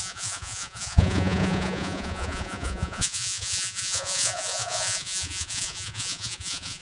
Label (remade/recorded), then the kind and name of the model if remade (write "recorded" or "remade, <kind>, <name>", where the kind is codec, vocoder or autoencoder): remade, vocoder, Vocos